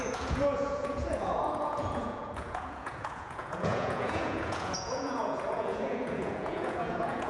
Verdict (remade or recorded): remade